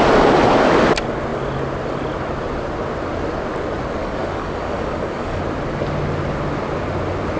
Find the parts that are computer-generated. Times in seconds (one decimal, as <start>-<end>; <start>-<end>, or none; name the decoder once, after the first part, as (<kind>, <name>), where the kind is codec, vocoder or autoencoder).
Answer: 4.0-5.4 (codec, DAC)